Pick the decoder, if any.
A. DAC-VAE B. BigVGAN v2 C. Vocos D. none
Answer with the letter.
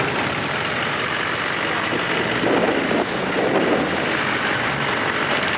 D